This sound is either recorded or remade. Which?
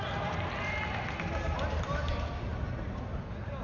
recorded